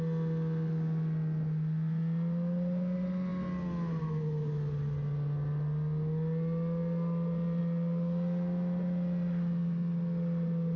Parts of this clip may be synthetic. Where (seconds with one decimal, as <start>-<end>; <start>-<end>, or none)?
none